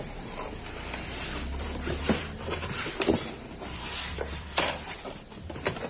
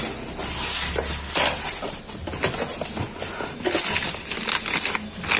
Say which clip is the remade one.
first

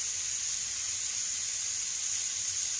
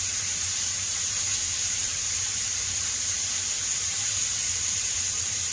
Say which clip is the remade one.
second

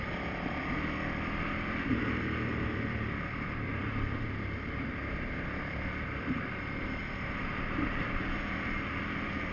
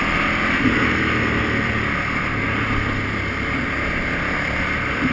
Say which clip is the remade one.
first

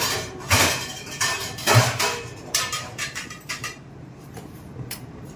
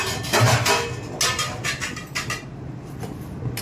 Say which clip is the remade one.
first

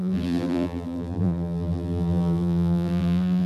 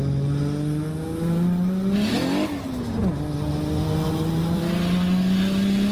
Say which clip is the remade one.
first